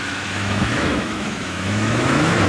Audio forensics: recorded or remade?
remade